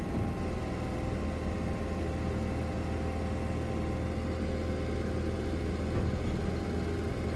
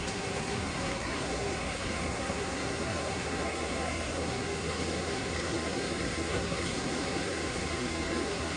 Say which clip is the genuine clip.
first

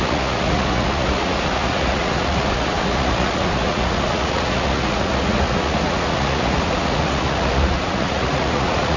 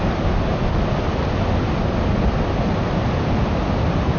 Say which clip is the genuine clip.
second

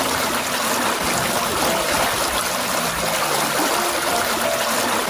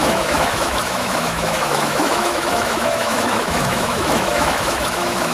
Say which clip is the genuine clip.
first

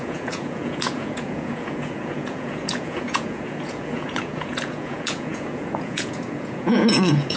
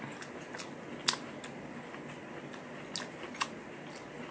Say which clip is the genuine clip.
second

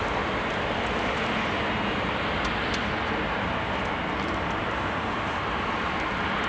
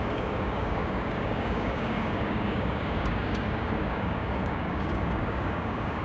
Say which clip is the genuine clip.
first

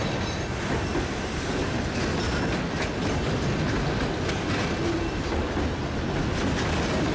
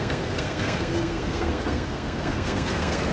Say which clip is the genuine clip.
first